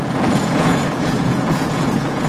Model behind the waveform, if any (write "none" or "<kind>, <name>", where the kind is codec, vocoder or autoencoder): vocoder, Vocos